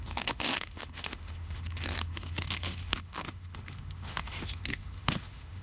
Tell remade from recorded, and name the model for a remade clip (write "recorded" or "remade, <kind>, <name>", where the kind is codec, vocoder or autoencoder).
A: remade, autoencoder, DAC-VAE